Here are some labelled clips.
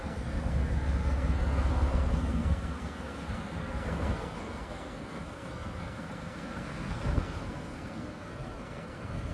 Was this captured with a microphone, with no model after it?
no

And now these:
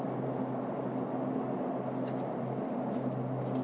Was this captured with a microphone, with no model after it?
yes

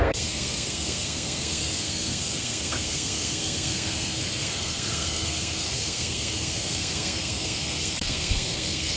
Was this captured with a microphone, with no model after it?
no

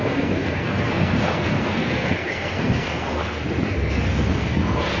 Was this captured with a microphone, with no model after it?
no